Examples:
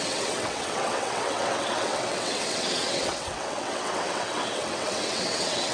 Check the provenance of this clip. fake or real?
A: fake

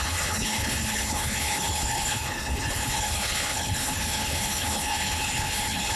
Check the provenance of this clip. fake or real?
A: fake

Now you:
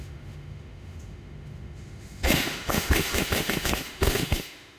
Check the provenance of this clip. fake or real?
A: fake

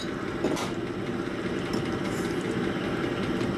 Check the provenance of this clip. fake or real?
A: real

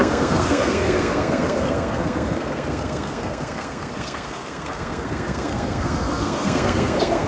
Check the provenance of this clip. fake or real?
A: fake